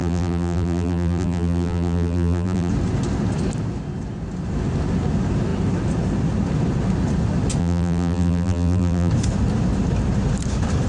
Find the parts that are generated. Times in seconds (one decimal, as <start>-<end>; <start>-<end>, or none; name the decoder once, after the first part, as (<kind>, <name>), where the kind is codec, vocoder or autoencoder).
0.0-2.7 (vocoder, BigVGAN v2); 7.6-9.1